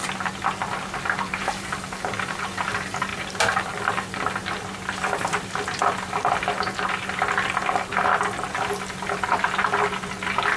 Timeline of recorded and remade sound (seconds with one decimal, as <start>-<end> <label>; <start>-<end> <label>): 0.0-10.6 recorded